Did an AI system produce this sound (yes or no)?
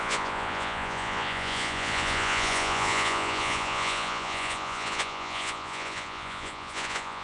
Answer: yes